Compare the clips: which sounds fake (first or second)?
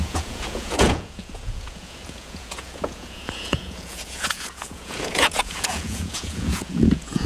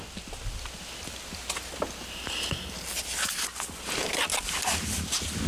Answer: first